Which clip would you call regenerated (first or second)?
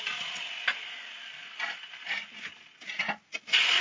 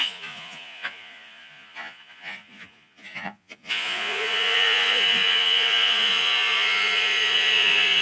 second